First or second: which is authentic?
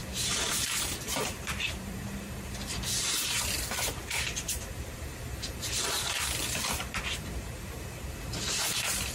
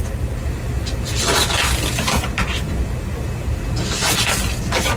second